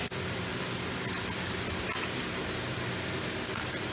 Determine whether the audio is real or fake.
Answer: real